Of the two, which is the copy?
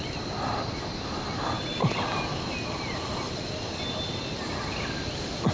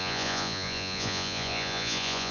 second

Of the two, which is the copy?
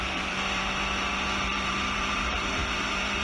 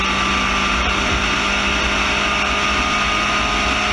first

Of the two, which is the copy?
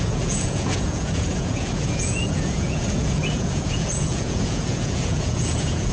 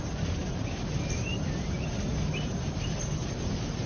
first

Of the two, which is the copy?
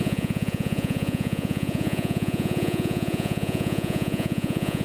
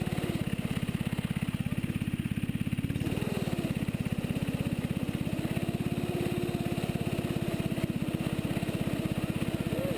first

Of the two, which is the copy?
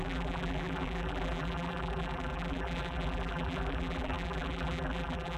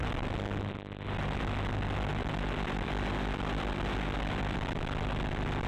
first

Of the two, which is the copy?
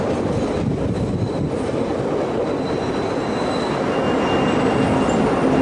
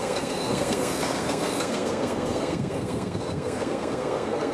second